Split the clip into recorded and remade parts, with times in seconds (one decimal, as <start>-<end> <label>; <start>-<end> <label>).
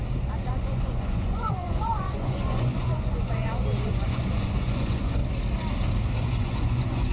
0.0-0.5 recorded; 0.5-5.2 remade; 5.2-6.2 recorded; 6.2-7.1 remade